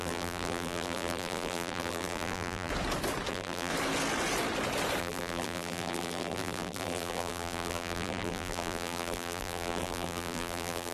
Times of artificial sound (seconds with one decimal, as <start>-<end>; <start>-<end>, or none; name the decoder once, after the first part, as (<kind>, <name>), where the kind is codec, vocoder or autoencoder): 0.0-2.7 (vocoder, BigVGAN v2); 3.3-3.7; 5.0-10.9